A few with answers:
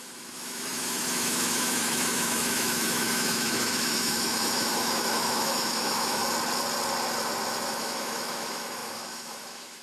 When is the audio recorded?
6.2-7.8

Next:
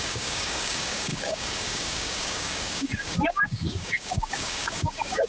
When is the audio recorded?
none

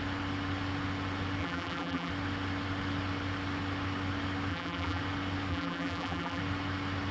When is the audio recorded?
0.0-1.4; 2.1-4.5; 5.0-5.5; 6.4-7.1

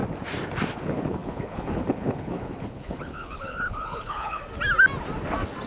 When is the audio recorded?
0.0-0.7; 4.4-5.7

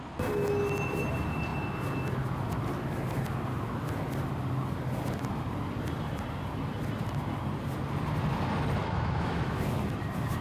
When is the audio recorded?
0.0-8.8; 9.6-10.4

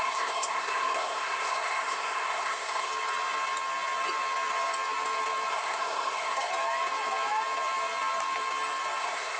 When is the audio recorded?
2.9-5.5; 6.5-9.0